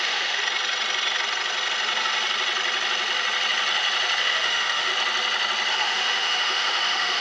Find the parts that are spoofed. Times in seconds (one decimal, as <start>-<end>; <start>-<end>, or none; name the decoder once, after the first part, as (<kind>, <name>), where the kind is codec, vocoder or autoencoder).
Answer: 0.0-0.4 (autoencoder, DAC-VAE); 4.2-4.9; 5.7-7.2